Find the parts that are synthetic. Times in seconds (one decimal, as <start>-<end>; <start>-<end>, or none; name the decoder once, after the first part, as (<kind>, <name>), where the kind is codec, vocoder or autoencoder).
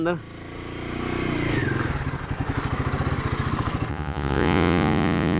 3.9-5.4 (vocoder, Vocos)